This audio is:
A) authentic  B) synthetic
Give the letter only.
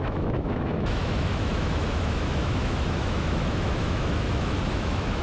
B